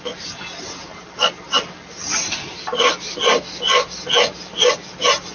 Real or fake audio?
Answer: real